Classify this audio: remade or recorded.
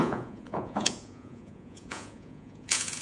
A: remade